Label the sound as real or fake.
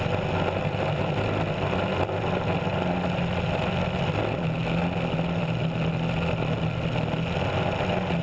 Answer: real